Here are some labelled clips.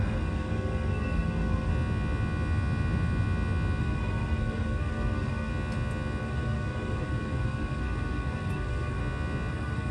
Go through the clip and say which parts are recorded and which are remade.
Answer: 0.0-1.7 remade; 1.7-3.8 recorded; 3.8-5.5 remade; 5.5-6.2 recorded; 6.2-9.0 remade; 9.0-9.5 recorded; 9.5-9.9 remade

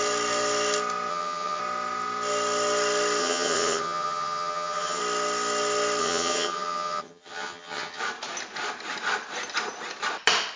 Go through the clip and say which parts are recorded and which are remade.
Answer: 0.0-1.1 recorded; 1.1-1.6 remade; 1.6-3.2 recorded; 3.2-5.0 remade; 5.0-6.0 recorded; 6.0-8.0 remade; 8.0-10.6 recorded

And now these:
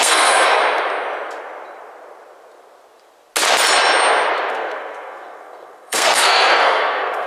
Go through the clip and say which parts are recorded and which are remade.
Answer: 0.0-0.6 remade; 0.6-4.5 recorded; 4.5-7.3 remade

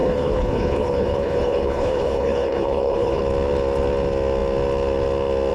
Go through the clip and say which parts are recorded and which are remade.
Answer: 0.0-3.2 remade; 3.2-5.5 recorded